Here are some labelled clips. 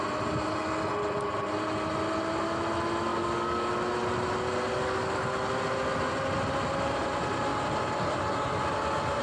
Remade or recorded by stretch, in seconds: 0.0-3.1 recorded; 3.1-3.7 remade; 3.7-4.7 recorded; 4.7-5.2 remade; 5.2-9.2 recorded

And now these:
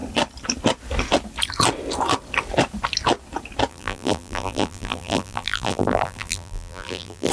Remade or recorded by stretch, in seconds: 0.0-3.7 recorded; 3.7-7.3 remade